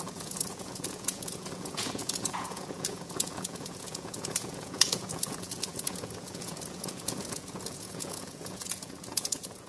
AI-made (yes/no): yes